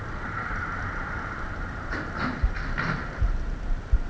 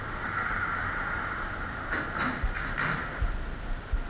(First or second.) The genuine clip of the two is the second